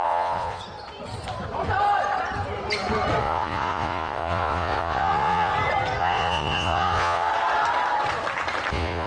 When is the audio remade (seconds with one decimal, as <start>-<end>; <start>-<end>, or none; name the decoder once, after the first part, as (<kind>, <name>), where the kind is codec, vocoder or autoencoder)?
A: 0.0-0.6 (vocoder, Vocos); 3.2-5.5; 6.0-7.3; 8.7-9.1